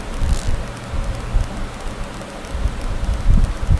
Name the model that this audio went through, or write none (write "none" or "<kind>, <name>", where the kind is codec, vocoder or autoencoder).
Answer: none